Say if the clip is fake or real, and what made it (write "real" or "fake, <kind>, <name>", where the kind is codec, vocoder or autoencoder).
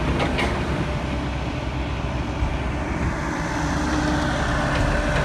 real